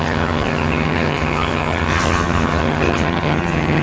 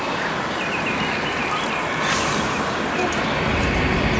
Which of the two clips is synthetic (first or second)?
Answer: first